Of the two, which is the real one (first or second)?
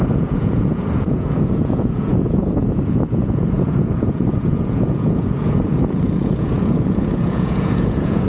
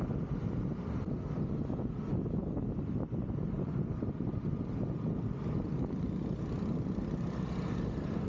second